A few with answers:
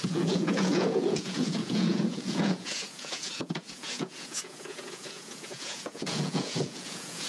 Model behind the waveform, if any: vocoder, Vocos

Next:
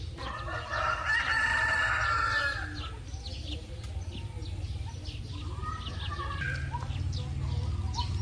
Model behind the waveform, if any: none